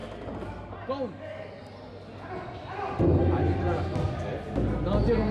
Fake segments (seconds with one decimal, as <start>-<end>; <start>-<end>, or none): none